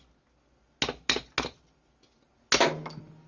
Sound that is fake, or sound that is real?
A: real